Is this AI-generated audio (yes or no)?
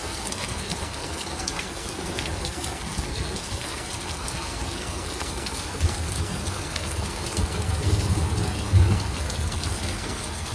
yes